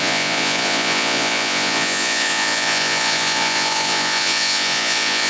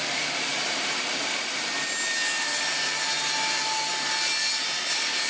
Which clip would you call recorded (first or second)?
second